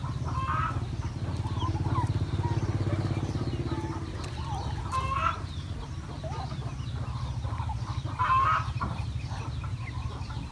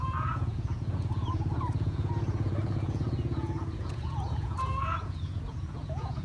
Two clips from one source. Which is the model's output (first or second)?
second